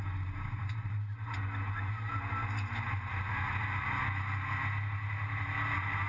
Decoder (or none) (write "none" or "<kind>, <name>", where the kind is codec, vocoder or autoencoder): none